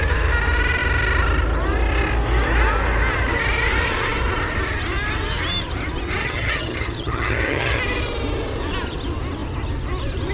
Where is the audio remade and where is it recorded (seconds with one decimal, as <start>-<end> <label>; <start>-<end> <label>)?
0.0-6.2 recorded; 6.2-7.8 remade; 7.8-10.3 recorded